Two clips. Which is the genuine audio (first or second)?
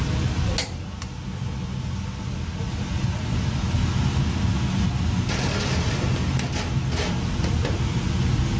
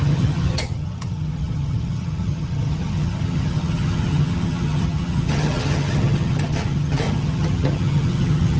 first